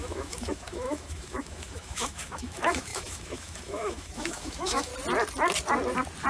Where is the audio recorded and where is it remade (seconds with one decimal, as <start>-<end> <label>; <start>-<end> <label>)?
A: 0.0-4.9 remade; 4.9-6.3 recorded